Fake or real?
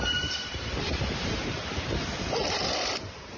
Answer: fake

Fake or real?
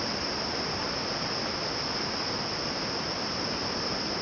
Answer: real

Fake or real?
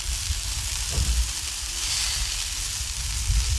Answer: real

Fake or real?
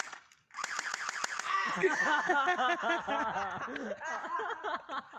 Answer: real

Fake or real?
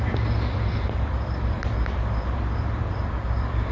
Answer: fake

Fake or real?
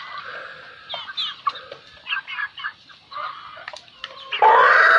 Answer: real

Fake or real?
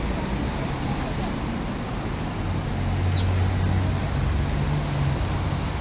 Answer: real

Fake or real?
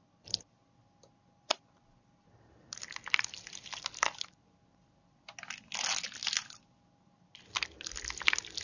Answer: real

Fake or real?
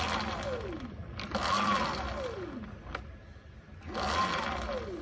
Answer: real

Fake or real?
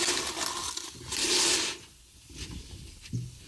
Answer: real